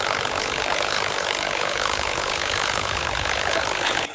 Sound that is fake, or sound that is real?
fake